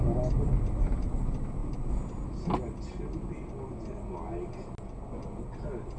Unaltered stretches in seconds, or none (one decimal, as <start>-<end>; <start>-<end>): 0.0-6.0